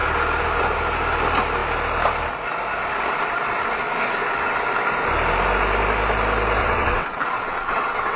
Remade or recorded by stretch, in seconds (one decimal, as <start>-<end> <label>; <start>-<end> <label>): 0.0-6.6 recorded; 6.6-8.2 remade